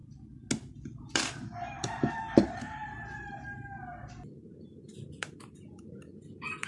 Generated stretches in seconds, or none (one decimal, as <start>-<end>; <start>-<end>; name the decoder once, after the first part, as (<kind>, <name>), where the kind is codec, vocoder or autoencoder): 0.9-6.7 (vocoder, BigVGAN v2)